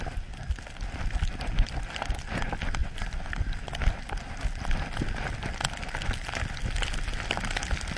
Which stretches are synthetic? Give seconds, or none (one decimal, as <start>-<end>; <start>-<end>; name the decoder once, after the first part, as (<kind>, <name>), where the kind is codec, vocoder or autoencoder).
none